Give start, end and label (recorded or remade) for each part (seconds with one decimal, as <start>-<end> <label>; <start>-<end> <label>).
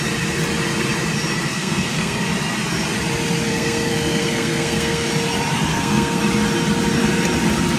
0.0-1.5 recorded; 1.5-2.2 remade; 2.2-3.5 recorded; 3.5-5.1 remade; 5.1-5.7 recorded; 5.7-6.2 remade; 6.2-7.8 recorded